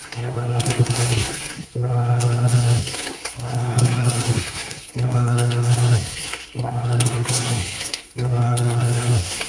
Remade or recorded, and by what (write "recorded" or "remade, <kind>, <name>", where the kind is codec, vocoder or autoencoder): remade, codec, SNAC